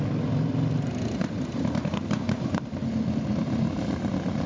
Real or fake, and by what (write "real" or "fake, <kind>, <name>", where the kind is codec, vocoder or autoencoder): fake, vocoder, BigVGAN v2